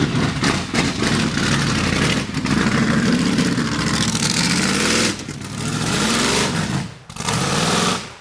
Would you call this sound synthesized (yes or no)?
yes